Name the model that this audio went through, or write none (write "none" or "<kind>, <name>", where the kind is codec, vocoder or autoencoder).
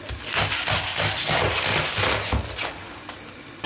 none